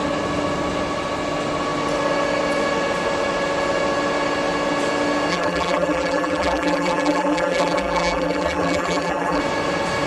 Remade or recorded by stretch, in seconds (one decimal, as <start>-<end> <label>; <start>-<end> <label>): 0.0-5.3 recorded; 5.3-9.4 remade; 9.4-10.1 recorded